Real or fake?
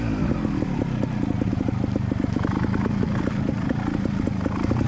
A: real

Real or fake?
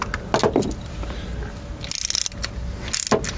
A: real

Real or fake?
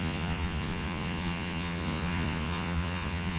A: fake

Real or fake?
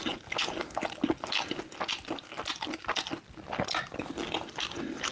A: real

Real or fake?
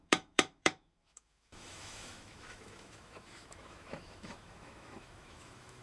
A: fake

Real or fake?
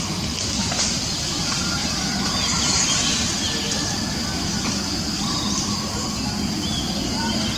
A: real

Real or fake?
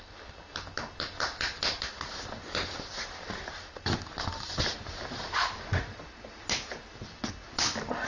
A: real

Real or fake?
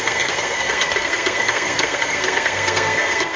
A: fake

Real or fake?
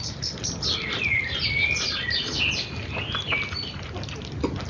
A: real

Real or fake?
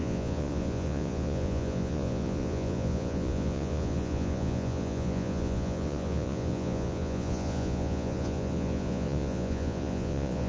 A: fake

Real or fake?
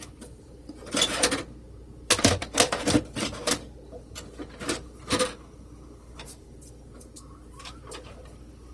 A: fake